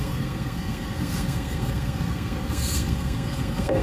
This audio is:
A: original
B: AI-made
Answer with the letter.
B